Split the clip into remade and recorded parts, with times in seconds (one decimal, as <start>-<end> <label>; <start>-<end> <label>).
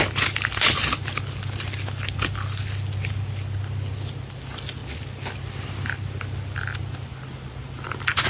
0.0-8.3 recorded